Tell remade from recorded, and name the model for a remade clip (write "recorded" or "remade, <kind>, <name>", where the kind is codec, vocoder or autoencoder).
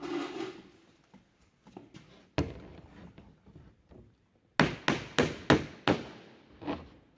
recorded